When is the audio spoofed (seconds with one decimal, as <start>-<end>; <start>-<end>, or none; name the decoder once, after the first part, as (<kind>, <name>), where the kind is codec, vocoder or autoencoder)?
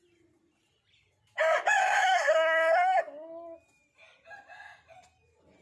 1.8-3.0 (codec, SNAC)